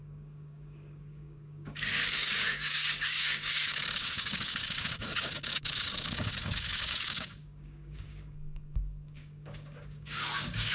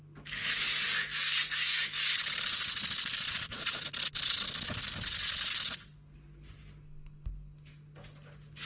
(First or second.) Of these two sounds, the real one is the second